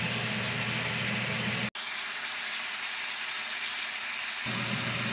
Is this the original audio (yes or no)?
yes